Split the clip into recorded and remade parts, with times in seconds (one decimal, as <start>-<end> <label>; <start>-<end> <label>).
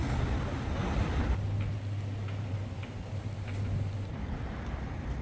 0.0-5.2 recorded